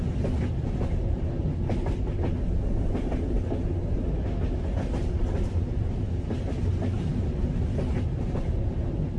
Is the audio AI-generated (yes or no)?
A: no